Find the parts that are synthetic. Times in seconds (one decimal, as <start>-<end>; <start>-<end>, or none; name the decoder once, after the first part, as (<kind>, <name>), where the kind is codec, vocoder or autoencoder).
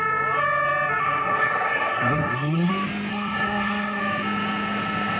1.0-2.7 (codec, SNAC); 3.1-4.0